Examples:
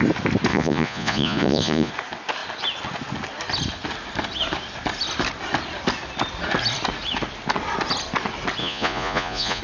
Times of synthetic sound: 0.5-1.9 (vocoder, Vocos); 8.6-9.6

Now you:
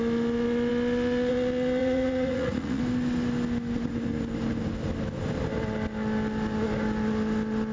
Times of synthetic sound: 1.8-2.8 (vocoder, Vocos)

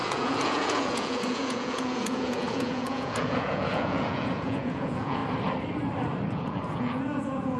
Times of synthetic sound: 0.0-5.2 (vocoder, Vocos); 6.3-7.6

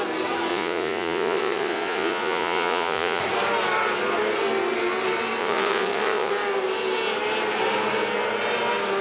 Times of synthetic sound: 0.5-3.2 (vocoder, Vocos); 5.4-6.3